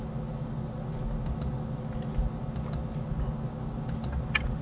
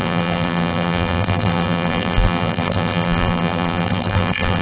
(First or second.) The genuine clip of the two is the first